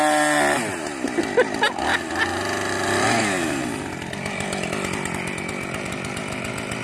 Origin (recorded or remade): recorded